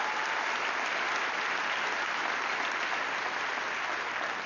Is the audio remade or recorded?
recorded